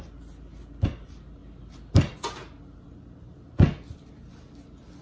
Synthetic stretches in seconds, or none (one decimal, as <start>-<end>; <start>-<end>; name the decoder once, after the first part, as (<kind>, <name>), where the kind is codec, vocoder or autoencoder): none